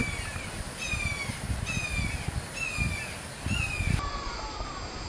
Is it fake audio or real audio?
real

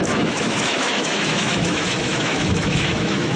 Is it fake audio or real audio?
fake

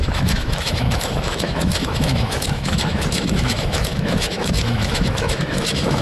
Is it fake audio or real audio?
fake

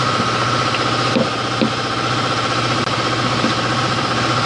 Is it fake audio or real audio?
real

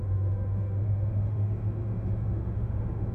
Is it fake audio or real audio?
fake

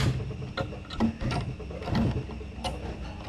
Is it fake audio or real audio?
real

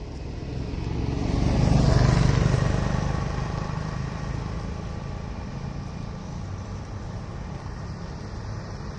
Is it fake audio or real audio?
real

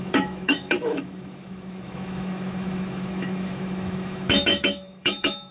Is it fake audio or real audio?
fake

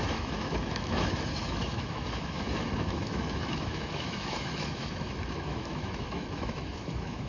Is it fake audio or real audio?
fake